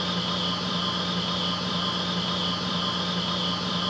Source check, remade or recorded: recorded